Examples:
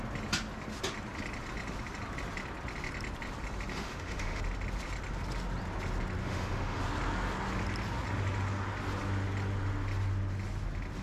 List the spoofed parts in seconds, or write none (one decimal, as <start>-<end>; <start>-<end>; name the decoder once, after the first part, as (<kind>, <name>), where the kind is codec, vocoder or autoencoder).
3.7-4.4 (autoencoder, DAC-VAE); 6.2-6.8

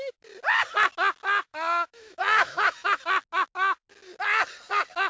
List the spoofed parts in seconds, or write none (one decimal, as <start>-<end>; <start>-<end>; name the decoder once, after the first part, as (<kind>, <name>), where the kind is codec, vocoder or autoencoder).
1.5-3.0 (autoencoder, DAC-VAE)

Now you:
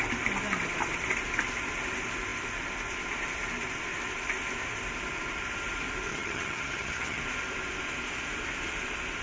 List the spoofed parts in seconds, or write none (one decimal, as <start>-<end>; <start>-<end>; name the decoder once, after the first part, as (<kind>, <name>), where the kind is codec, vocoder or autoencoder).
6.1-7.2 (vocoder, HiFi-GAN)

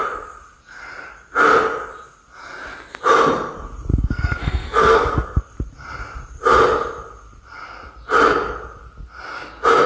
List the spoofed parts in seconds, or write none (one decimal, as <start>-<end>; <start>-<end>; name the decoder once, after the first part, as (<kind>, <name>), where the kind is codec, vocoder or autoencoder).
3.9-5.4 (codec, SNAC)

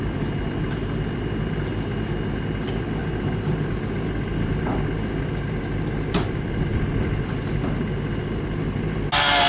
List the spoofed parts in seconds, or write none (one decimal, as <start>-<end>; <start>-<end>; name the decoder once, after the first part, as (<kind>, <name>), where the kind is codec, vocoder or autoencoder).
none